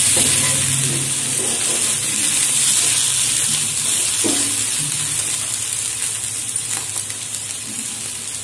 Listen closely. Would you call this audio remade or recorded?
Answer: recorded